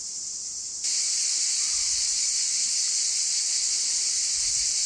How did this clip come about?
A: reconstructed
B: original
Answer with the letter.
B